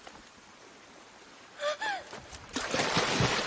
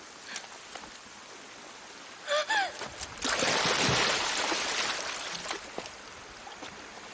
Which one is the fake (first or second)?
first